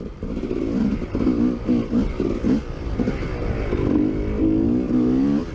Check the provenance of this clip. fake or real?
real